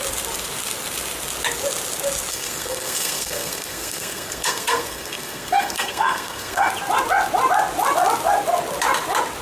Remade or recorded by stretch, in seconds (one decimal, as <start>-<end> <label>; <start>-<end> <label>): 0.0-2.3 recorded; 2.3-6.7 remade; 6.7-9.4 recorded